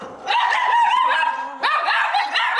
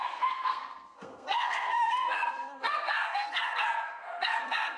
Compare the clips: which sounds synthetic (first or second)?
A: second